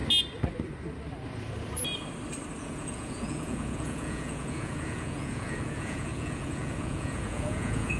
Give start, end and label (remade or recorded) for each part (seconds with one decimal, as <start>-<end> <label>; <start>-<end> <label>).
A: 0.0-2.6 recorded; 2.6-8.0 remade